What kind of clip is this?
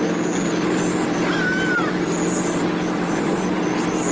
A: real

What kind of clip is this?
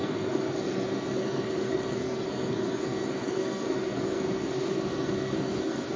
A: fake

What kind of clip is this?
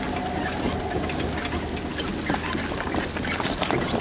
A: real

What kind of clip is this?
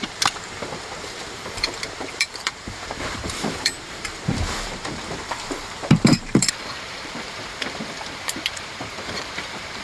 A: fake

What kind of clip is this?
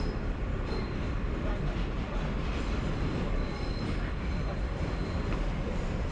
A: fake